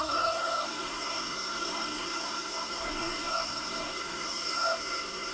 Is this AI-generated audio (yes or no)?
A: yes